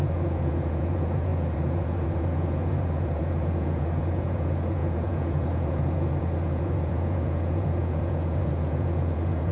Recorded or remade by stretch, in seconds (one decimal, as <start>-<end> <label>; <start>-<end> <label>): 0.0-9.5 remade